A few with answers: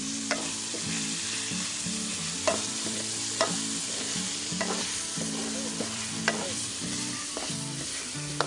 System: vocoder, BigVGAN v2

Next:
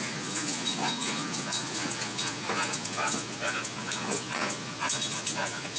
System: vocoder, Vocos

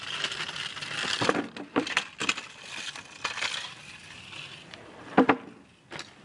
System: none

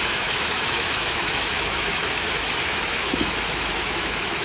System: autoencoder, DAC-VAE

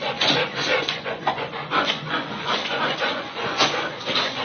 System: vocoder, Vocos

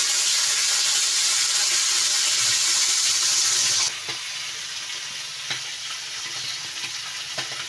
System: none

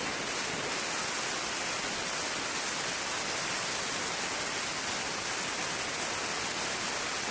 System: none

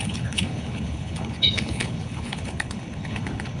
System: codec, HILCodec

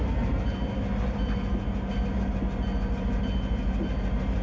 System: none